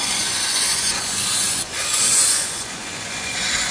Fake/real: fake